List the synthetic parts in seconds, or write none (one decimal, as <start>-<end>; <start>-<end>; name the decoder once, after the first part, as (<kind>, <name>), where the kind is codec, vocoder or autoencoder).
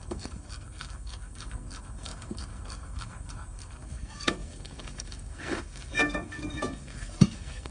0.0-7.7 (codec, SNAC)